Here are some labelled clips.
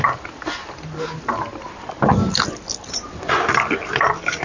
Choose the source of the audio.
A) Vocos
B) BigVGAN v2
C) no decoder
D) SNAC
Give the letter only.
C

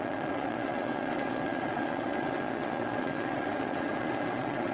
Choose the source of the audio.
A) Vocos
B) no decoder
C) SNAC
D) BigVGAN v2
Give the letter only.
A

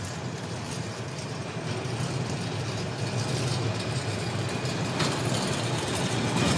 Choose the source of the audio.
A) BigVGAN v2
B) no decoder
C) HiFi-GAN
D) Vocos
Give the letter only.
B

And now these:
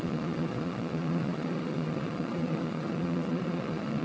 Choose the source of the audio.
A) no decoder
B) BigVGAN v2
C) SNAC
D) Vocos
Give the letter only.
D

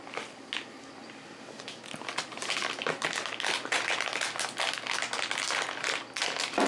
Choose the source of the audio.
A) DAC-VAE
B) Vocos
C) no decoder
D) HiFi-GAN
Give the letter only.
C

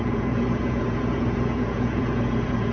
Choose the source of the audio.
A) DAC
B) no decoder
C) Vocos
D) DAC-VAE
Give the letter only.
C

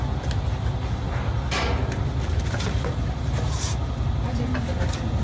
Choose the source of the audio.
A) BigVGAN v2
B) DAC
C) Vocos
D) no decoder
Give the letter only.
D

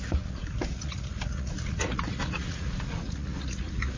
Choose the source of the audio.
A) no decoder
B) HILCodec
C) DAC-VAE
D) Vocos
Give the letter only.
D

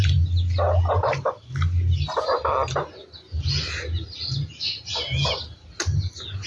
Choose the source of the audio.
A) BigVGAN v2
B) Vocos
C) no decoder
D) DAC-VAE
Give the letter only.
C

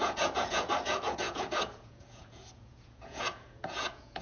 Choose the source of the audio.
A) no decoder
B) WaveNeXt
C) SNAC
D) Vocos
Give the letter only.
D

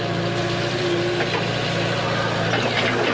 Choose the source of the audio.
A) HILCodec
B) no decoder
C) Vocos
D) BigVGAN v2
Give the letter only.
B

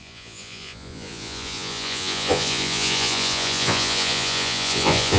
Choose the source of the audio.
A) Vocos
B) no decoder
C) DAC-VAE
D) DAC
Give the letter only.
A